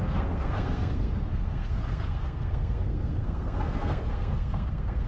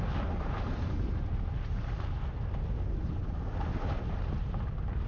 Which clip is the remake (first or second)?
first